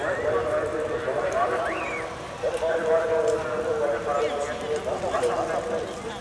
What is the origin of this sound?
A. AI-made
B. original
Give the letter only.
B